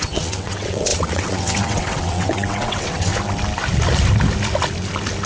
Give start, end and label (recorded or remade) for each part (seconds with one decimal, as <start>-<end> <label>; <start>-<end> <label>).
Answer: 0.0-3.1 remade; 3.1-5.3 recorded